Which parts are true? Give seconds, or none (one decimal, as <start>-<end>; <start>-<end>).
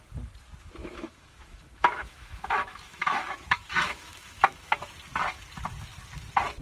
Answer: 0.0-0.8; 4.8-6.6